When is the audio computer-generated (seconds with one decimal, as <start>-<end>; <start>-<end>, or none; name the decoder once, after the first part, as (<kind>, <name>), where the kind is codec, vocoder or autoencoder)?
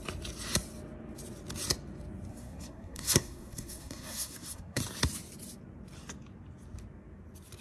2.3-4.8 (codec, SNAC)